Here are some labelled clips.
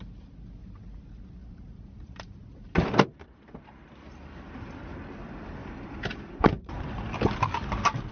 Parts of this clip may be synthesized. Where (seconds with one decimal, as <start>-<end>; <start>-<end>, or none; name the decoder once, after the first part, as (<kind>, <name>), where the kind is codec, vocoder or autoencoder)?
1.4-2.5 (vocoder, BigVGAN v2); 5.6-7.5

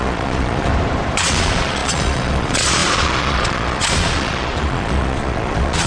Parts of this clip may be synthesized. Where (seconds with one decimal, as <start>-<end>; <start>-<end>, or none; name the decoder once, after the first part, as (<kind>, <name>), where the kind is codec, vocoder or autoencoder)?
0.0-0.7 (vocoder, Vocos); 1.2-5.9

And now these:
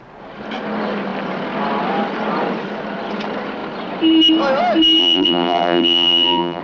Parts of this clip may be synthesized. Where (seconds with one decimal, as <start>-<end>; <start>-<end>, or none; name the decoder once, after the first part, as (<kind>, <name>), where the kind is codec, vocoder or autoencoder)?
5.0-6.6 (vocoder, BigVGAN v2)

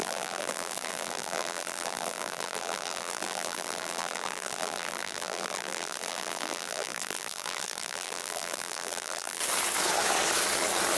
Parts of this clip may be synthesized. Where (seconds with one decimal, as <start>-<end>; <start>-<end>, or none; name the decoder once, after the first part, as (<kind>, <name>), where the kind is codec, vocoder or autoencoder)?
0.0-9.4 (vocoder, BigVGAN v2)

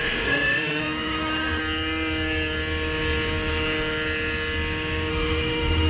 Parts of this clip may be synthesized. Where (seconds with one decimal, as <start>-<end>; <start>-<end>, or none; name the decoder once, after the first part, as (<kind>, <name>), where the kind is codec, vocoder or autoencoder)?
0.0-1.6 (autoencoder, DAC-VAE); 5.1-5.9

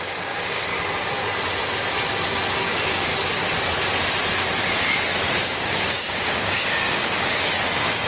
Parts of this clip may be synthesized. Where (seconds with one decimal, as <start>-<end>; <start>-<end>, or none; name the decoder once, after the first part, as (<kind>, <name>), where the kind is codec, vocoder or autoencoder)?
0.0-0.7 (codec, DAC); 2.6-3.1; 5.4-8.1

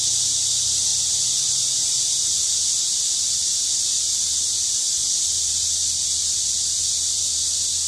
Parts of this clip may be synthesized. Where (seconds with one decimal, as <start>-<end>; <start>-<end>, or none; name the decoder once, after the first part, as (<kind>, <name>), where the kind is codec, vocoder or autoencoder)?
none